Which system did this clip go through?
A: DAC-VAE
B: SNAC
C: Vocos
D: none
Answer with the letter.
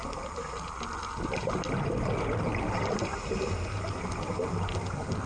D